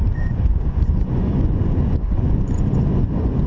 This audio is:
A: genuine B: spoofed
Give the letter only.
B